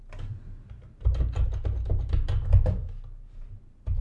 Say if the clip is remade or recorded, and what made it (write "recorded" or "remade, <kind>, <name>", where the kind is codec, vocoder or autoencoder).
recorded